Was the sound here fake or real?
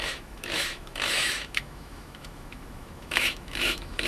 fake